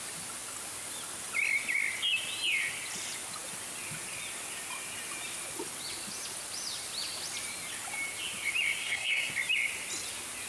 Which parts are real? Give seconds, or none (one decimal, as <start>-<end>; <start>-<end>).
0.0-8.8; 9.3-10.5